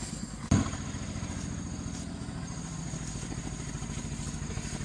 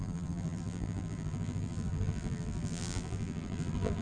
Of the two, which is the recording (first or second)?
first